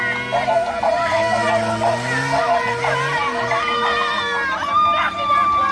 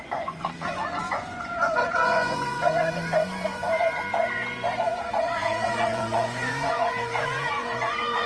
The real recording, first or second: first